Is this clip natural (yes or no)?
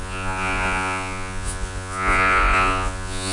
no